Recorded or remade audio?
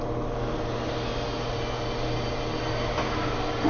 recorded